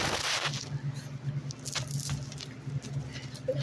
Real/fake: real